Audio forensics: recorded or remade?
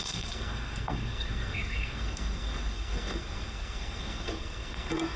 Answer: remade